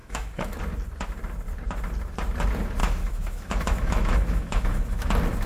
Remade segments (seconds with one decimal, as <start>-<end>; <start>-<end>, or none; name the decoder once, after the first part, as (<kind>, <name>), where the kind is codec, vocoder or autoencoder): 0.0-0.6 (autoencoder, DAC-VAE); 2.8-5.1